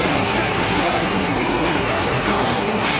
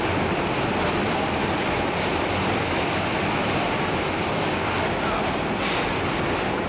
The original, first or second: second